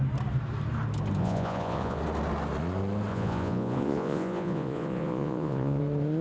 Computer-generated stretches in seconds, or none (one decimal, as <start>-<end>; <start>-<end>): 1.2-2.0; 3.1-5.8